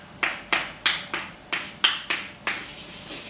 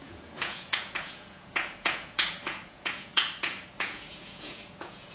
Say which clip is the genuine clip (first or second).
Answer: first